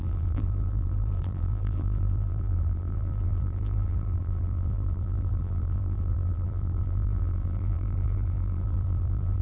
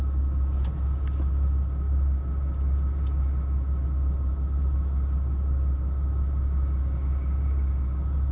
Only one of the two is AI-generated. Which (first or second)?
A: first